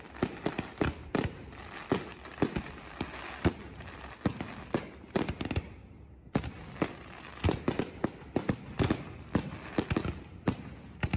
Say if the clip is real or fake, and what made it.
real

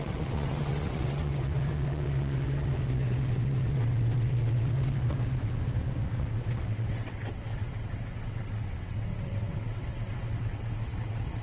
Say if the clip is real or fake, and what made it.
fake, vocoder, WaveNeXt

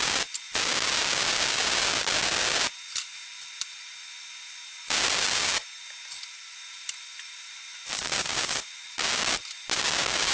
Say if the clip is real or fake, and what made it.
real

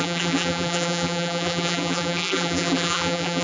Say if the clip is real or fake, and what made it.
fake, vocoder, BigVGAN v2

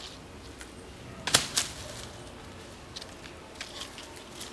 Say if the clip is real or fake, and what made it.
real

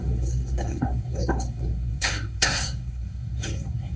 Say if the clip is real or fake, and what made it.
fake, codec, SNAC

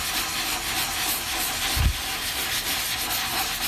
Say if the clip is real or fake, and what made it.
real